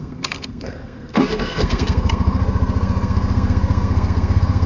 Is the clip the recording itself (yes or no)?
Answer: no